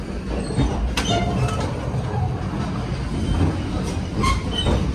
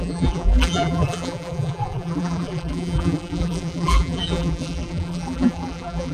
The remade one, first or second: second